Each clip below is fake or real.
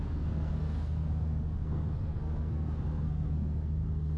fake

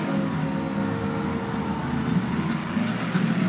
real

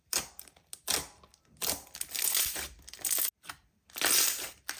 real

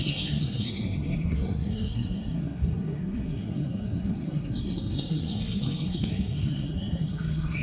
fake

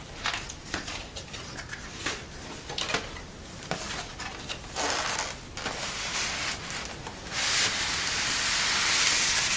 real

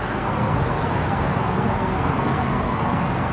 fake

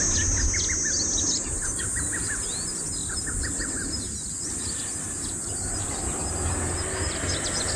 real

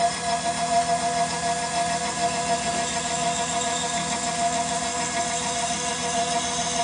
real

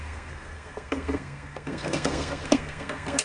fake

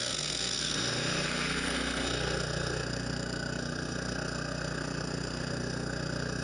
fake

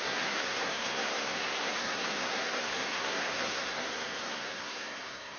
fake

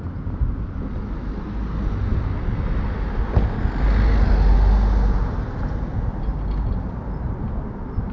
real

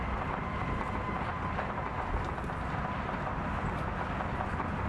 real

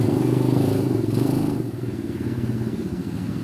fake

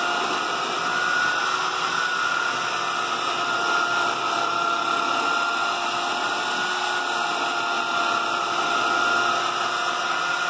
real